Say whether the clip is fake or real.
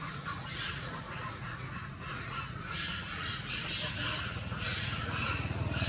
fake